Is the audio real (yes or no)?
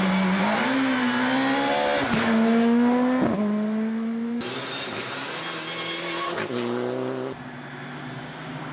yes